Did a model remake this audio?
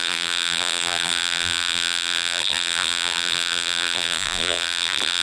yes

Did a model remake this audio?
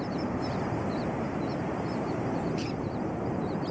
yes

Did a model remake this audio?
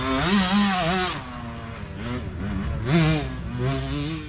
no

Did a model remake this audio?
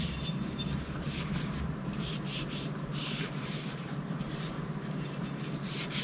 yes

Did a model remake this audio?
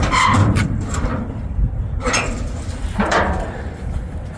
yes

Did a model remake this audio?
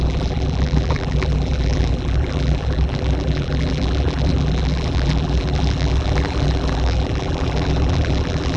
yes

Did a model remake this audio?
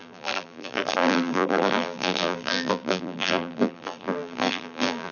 yes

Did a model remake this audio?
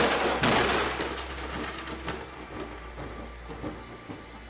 no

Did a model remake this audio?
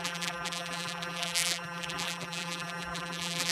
yes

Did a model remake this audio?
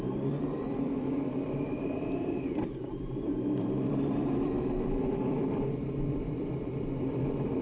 yes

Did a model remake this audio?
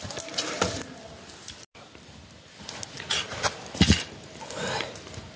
no